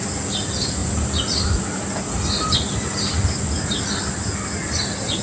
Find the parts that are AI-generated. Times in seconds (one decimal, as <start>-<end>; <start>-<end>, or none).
none